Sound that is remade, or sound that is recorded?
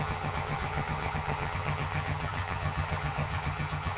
remade